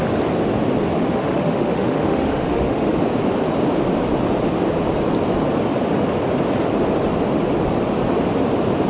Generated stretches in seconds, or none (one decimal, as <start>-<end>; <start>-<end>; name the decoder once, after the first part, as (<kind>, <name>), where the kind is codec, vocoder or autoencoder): 0.9-3.0 (autoencoder, DAC-VAE)